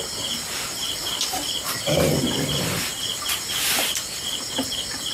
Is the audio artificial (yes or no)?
no